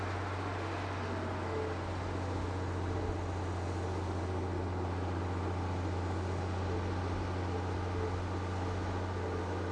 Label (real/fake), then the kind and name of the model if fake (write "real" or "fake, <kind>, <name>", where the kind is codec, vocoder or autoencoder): real